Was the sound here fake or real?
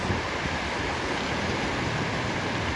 real